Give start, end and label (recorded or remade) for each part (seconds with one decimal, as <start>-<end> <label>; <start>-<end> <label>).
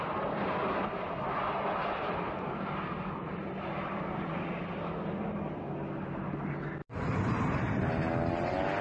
0.0-1.8 recorded; 1.8-5.6 remade; 5.6-8.8 recorded